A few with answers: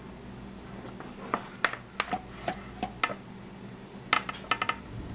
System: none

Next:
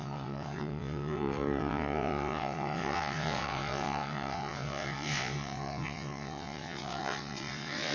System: vocoder, WaveNeXt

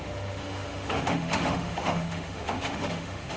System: autoencoder, DAC-VAE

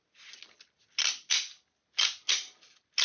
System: none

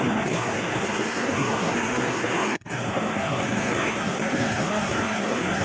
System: codec, SNAC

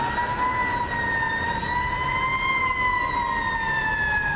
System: none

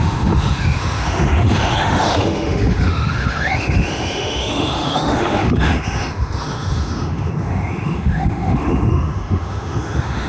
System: autoencoder, DAC-VAE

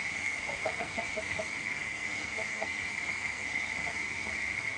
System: codec, SNAC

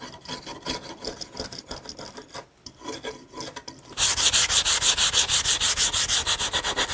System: none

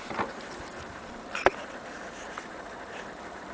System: vocoder, BigVGAN v2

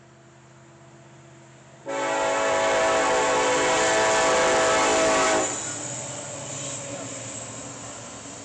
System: none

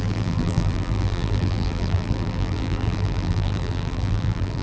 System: vocoder, BigVGAN v2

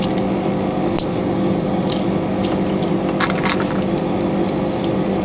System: none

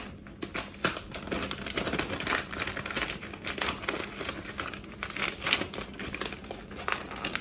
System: none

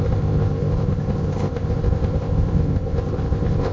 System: codec, ZipCodec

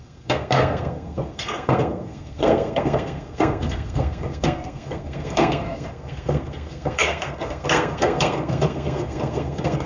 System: codec, SNAC